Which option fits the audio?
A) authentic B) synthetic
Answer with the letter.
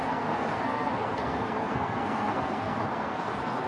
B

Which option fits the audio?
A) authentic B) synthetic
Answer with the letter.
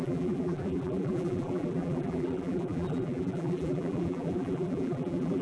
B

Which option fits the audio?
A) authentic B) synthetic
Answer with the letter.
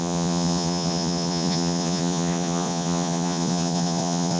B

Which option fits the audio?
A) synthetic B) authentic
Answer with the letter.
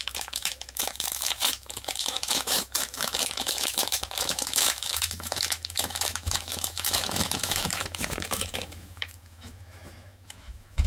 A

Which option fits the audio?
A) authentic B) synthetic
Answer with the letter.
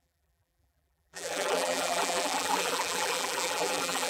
B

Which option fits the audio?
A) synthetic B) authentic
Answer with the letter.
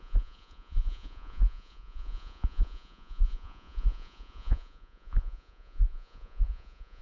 A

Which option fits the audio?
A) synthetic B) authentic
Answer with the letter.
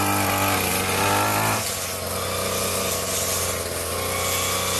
B